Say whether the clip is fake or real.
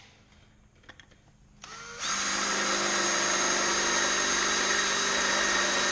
real